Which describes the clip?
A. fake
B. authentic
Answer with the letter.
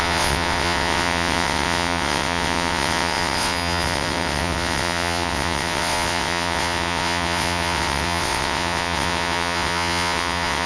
A